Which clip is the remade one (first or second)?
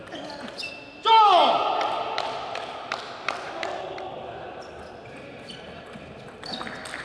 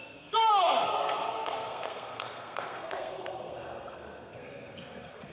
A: second